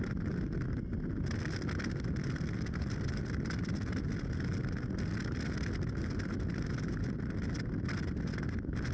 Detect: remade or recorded recorded